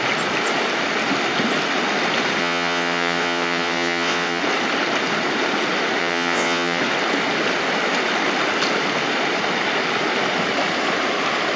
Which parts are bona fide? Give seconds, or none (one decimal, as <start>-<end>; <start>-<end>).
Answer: 0.0-2.4; 4.4-6.0; 6.8-11.6